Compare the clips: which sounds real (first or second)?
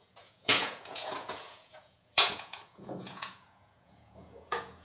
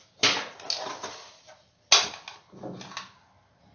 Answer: second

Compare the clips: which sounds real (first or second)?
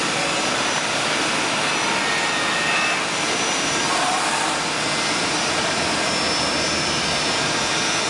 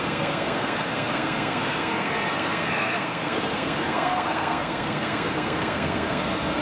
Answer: first